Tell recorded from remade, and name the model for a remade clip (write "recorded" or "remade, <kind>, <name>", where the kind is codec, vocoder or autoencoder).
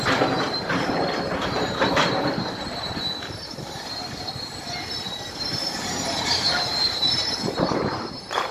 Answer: remade, vocoder, BigVGAN v2